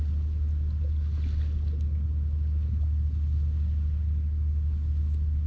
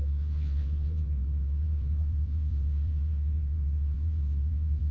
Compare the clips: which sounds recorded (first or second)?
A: first